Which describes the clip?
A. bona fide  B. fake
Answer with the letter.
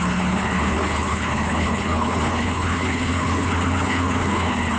B